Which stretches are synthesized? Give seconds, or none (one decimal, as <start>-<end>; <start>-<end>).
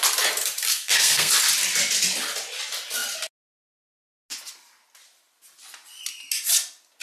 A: 0.7-1.3